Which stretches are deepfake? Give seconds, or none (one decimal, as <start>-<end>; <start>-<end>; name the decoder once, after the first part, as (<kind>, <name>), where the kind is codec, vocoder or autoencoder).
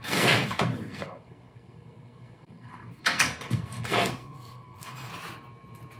0.0-5.1 (codec, SNAC)